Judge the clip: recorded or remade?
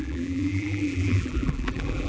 remade